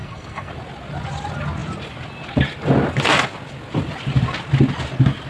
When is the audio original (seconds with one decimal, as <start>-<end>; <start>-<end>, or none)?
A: 0.5-5.3